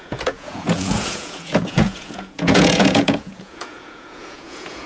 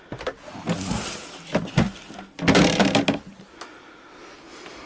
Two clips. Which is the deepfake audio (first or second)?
first